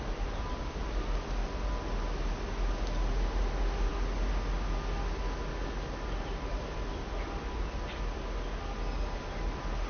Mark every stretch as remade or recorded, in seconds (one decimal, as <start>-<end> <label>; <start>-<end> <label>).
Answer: 0.0-9.9 recorded